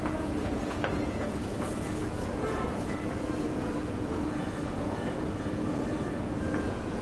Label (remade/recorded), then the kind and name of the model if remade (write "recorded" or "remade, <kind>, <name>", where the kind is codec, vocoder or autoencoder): remade, vocoder, Vocos